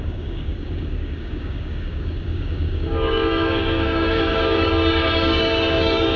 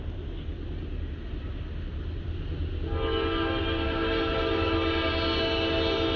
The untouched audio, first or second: second